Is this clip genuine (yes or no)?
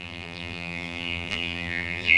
no